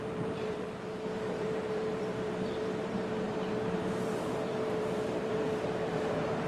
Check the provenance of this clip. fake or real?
fake